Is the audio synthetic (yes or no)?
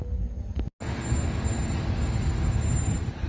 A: no